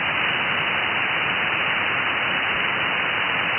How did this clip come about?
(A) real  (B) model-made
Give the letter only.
A